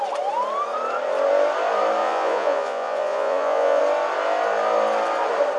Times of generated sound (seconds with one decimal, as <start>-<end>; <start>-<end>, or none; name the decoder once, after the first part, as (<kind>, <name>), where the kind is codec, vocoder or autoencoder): 2.0-3.8 (vocoder, Vocos)